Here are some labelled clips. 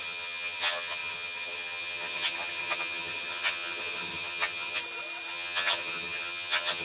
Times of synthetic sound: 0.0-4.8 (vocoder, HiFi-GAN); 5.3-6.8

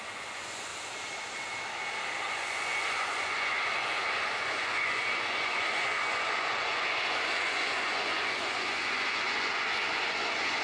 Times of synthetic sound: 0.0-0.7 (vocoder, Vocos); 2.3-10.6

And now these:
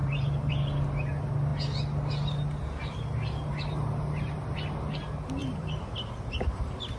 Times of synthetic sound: 0.0-0.5 (vocoder, BigVGAN v2); 5.4-7.0

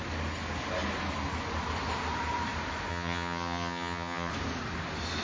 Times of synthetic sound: 2.9-4.3 (vocoder, HiFi-GAN)

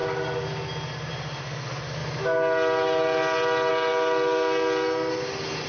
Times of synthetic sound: none

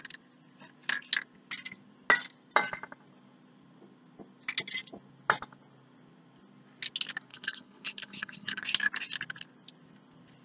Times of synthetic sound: 7.3-8.6 (codec, HILCodec)